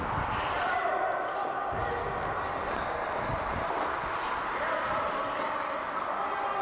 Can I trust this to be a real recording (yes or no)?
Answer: yes